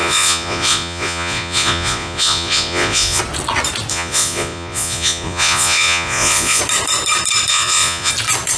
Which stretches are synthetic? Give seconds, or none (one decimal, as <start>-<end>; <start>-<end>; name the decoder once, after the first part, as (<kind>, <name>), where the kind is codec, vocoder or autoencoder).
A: 0.0-3.2 (vocoder, Vocos); 3.9-6.6; 7.5-8.1